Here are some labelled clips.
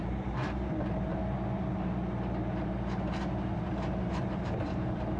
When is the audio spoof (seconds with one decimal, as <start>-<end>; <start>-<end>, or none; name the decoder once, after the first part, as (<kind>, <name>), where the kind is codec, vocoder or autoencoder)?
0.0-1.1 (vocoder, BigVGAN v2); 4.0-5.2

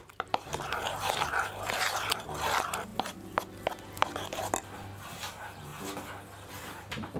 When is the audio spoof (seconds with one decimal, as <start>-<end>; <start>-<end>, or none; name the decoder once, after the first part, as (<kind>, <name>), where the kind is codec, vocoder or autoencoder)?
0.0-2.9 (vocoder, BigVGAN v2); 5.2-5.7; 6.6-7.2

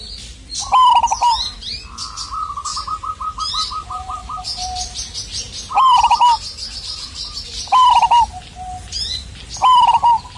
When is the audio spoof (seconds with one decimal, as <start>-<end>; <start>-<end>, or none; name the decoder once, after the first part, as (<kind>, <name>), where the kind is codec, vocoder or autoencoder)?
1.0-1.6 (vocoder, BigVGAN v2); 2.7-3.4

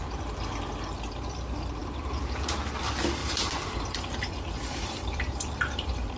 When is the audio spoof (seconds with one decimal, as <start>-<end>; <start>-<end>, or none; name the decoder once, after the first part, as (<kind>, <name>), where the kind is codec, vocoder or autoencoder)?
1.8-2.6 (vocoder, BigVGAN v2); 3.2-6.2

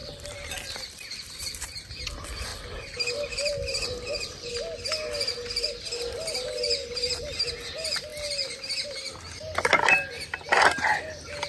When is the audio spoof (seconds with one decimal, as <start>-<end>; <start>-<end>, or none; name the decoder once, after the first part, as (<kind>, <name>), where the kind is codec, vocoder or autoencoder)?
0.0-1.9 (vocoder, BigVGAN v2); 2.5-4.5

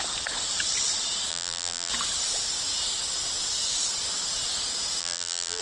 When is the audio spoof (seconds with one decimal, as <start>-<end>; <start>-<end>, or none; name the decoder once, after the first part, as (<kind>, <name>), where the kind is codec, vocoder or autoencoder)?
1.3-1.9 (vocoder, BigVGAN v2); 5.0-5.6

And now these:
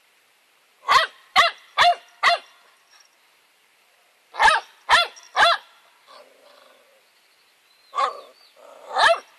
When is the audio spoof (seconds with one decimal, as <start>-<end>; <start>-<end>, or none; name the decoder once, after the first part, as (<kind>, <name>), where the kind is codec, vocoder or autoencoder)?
0.0-1.9 (vocoder, BigVGAN v2); 3.2-5.3; 6.4-9.4